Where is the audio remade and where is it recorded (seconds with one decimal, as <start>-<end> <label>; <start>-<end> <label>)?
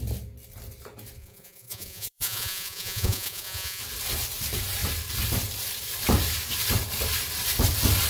0.0-1.2 recorded; 1.2-3.8 remade; 3.8-8.1 recorded